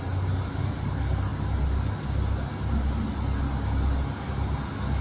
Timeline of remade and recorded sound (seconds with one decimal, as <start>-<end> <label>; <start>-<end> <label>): 0.0-5.0 recorded